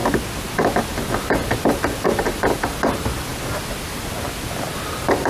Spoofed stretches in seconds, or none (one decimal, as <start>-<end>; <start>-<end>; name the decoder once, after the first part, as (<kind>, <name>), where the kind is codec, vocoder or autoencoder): none